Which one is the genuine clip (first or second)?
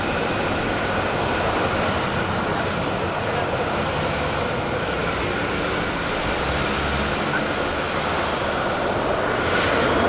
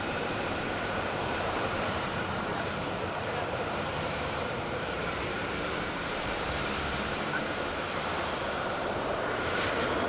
first